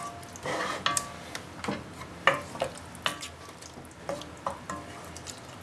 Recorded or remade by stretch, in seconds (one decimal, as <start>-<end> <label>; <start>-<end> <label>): 0.0-5.6 recorded